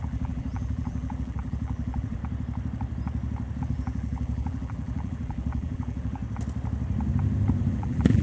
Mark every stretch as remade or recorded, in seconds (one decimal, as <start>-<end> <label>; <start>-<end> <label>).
0.0-2.2 remade; 2.2-3.6 recorded; 3.6-6.2 remade; 6.2-7.7 recorded; 7.7-8.2 remade